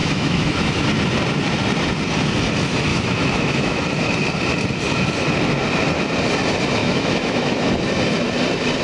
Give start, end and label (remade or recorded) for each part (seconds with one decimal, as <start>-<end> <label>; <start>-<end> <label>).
0.0-0.7 remade; 0.7-2.9 recorded; 2.9-3.8 remade; 3.8-6.8 recorded; 6.8-7.7 remade; 7.7-8.8 recorded